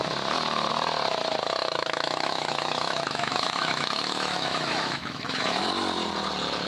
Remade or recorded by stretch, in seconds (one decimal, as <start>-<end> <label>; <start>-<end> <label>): 0.0-1.6 recorded; 1.6-5.6 remade; 5.6-6.7 recorded